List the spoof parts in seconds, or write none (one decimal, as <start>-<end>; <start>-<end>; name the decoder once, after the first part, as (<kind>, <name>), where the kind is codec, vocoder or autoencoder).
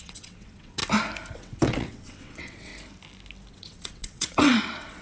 0.0-0.8 (vocoder, WaveNeXt); 1.3-2.7; 3.5-5.0